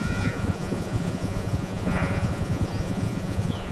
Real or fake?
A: fake